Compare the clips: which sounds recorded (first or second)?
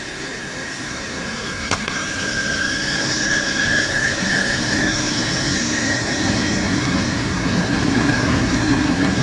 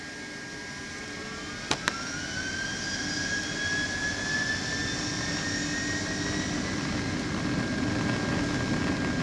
second